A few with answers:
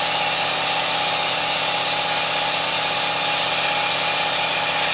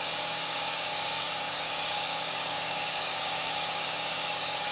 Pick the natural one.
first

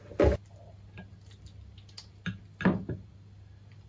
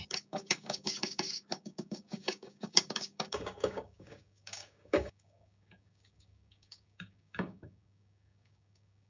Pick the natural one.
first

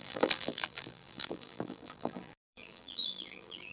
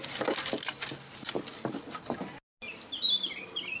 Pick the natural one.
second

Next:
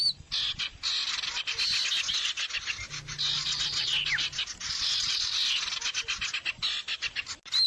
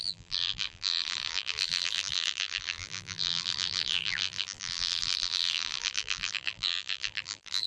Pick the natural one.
first